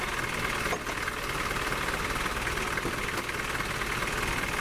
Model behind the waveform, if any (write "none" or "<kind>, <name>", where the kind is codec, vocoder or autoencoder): none